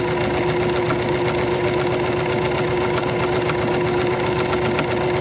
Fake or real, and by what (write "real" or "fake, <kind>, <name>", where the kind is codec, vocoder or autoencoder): real